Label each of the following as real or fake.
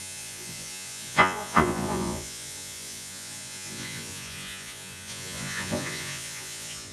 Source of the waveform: fake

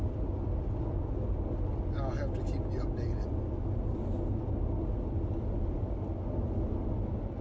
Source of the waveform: real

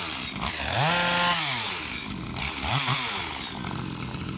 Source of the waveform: real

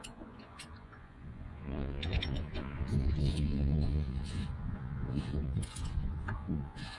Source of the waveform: fake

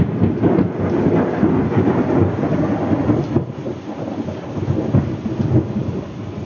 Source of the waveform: real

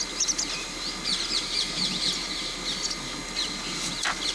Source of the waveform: real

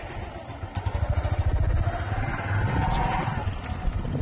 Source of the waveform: real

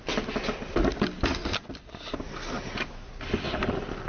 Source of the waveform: real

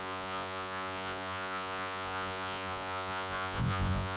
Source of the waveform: fake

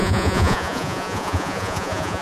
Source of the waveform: fake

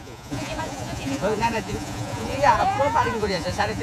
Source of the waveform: fake